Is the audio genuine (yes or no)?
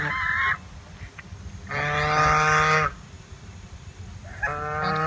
yes